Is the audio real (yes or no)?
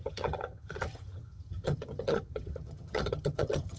no